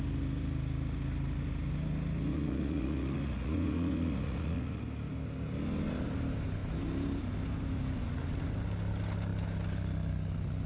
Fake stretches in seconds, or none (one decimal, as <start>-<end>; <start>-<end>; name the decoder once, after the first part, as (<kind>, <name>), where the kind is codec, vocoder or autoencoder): 2.3-4.8 (vocoder, Vocos)

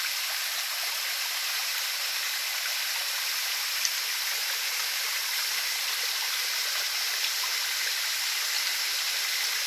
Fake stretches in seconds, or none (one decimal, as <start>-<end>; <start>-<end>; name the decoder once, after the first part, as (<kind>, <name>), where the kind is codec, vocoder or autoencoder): none

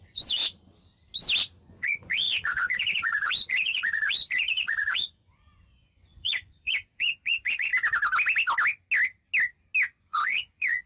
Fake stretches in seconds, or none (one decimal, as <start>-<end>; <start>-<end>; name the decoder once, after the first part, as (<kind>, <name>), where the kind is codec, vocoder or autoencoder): 0.0-0.4 (vocoder, Vocos); 1.6-7.7; 10.0-10.9

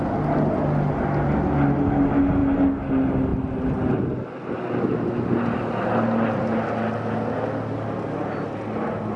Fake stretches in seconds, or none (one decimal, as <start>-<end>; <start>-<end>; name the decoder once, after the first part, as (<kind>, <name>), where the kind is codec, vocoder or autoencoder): none

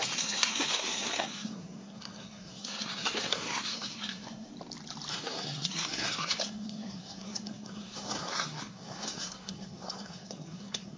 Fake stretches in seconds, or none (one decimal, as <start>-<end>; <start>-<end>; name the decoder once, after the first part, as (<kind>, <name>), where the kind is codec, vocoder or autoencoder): 0.0-4.5 (codec, SNAC); 5.1-11.0

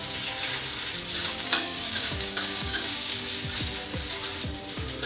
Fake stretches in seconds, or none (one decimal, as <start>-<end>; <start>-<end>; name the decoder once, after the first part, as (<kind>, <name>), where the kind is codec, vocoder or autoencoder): 1.2-3.3 (codec, DAC)